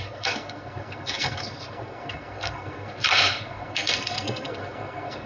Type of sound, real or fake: fake